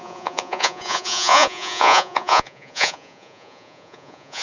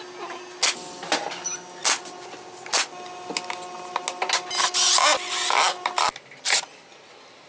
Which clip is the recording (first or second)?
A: second